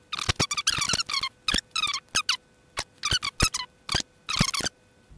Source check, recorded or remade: recorded